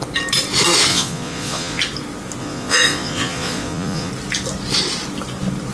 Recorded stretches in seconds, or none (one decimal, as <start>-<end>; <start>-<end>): 0.0-0.9; 1.8-2.4; 4.1-5.7